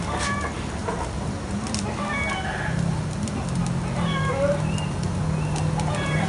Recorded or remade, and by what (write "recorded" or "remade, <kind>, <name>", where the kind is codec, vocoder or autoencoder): recorded